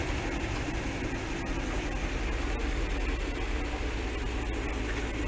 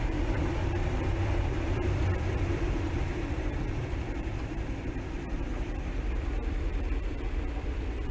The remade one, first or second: second